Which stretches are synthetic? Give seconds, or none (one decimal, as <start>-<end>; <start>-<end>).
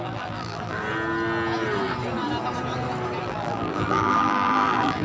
0.0-0.8; 3.2-5.0